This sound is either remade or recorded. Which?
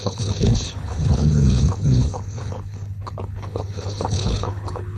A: remade